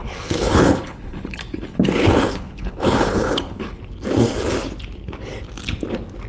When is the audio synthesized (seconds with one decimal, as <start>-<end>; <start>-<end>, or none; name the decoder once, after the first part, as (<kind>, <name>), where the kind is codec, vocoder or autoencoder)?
0.0-3.8 (codec, HILCodec)